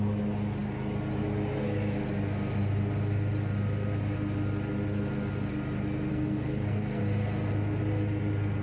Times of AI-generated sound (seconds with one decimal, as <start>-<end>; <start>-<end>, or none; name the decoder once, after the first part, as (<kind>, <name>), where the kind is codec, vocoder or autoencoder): 6.1-7.0 (codec, SNAC)